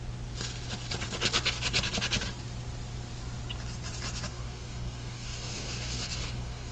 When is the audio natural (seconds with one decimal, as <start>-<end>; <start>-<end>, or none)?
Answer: 0.0-4.3